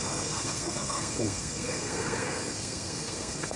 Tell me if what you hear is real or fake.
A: fake